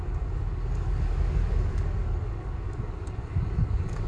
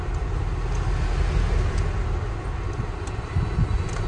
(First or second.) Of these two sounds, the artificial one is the first